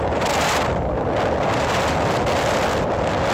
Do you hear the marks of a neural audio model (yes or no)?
no